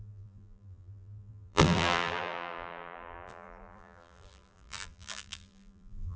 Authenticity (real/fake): fake